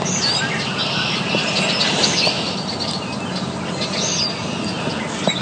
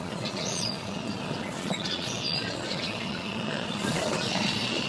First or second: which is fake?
second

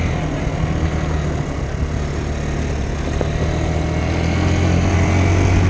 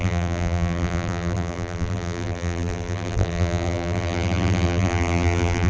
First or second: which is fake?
second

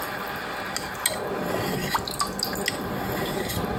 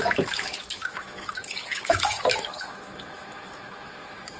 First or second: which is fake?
second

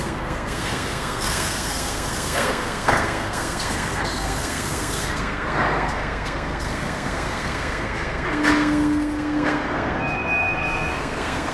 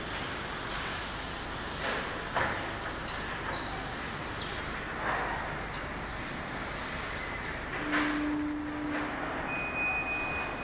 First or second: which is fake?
first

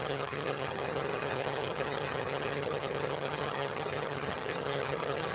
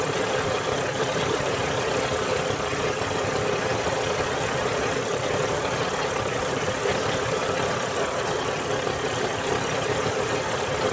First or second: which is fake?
first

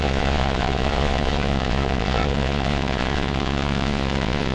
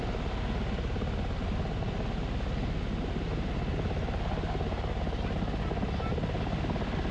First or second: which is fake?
first